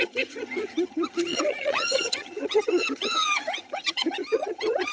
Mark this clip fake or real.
fake